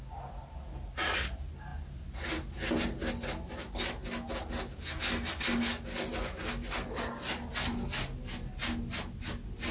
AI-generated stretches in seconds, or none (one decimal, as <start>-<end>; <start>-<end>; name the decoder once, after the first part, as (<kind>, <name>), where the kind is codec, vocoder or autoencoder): none